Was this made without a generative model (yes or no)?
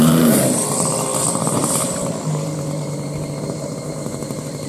no